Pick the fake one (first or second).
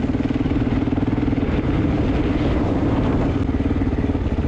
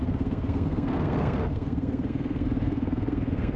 second